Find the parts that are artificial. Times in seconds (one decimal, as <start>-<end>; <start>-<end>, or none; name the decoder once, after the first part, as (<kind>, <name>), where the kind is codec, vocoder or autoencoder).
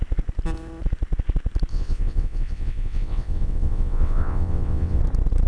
1.7-5.0 (vocoder, WaveNeXt)